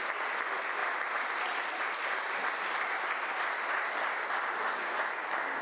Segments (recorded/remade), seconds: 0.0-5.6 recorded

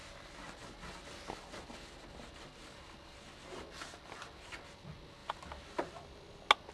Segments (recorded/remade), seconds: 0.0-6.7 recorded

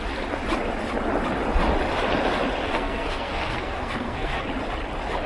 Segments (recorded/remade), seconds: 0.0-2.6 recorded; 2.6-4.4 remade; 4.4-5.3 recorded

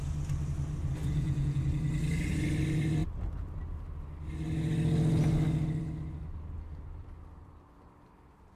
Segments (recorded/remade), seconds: 0.0-1.0 recorded; 1.0-1.6 remade; 1.6-8.6 recorded

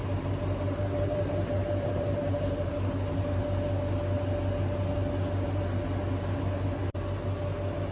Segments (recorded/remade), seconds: 0.0-2.7 remade; 2.7-7.9 recorded

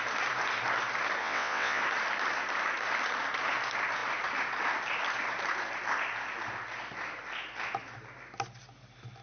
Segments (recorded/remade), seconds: 0.0-1.2 recorded; 1.2-1.8 remade; 1.8-9.2 recorded